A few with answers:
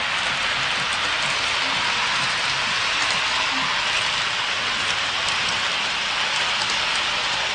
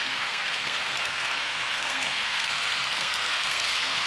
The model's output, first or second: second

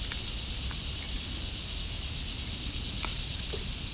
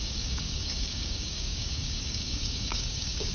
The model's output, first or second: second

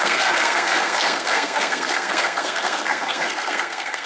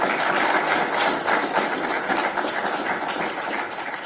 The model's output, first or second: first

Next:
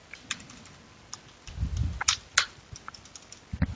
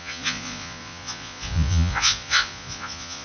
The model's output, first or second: second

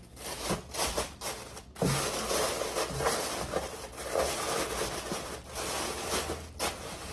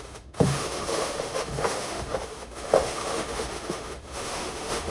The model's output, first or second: second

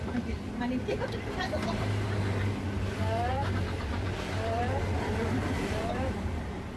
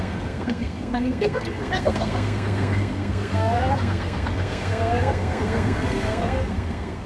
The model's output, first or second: second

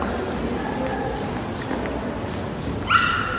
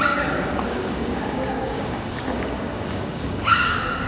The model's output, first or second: second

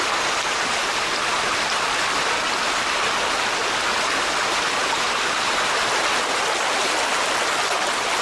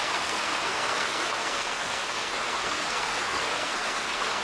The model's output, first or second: second